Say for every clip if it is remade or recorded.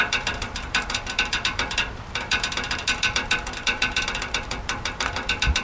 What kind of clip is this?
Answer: remade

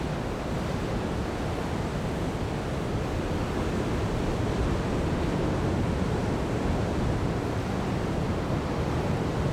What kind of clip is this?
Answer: recorded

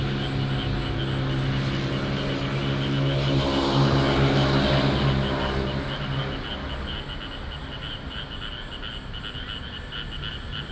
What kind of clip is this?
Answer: recorded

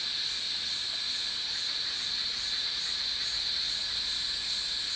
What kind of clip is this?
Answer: recorded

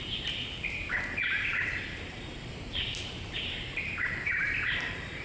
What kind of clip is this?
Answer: remade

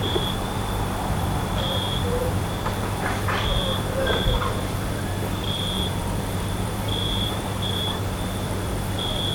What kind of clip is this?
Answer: remade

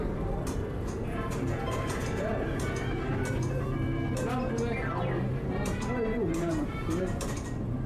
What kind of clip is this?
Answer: remade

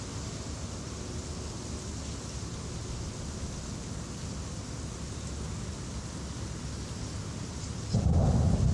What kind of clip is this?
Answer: recorded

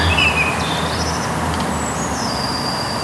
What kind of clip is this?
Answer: recorded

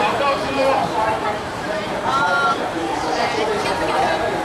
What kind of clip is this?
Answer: remade